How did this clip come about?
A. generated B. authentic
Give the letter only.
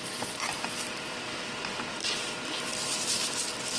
A